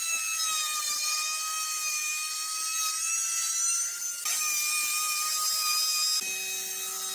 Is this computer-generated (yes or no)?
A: no